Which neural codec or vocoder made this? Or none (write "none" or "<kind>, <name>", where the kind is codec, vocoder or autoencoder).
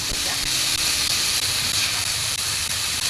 vocoder, BigVGAN v2